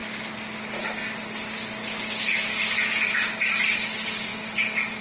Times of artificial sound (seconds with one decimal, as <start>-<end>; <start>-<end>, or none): 0.0-1.0; 3.1-4.3